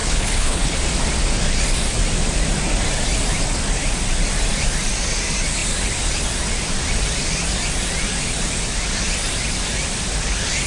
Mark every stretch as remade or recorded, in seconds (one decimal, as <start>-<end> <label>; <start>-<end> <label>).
0.0-0.8 remade; 0.8-10.7 recorded